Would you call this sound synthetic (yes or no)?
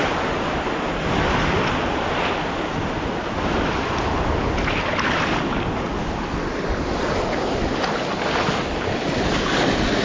no